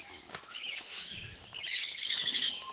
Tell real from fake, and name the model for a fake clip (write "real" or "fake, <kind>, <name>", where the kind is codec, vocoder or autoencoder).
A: fake, autoencoder, DAC-VAE